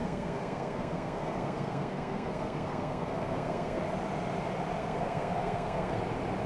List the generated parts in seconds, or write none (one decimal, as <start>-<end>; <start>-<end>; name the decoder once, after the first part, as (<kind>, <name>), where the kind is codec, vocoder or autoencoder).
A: 0.0-3.8 (codec, SNAC); 4.8-6.0